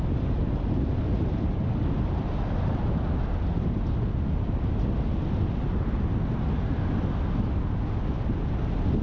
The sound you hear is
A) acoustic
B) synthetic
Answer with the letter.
A